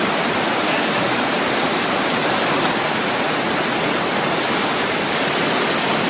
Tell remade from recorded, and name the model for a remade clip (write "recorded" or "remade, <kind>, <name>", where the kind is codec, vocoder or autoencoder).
recorded